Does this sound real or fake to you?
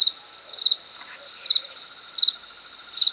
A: real